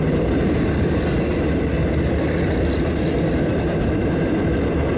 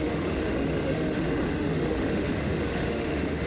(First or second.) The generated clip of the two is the second